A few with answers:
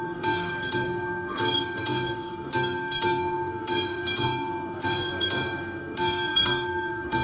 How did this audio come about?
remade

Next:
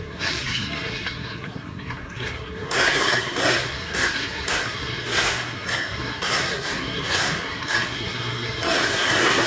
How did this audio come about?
remade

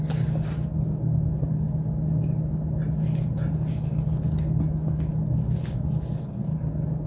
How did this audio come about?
recorded